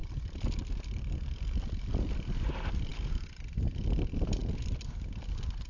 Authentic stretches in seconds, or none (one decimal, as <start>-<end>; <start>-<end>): 4.4-5.7